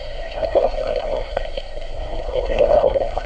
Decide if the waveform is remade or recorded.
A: remade